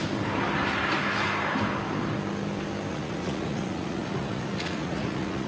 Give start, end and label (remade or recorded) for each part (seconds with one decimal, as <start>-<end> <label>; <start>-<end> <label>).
0.0-2.9 recorded; 2.9-5.5 remade